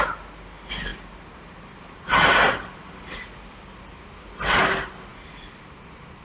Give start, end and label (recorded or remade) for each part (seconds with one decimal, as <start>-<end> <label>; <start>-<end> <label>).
0.0-6.2 recorded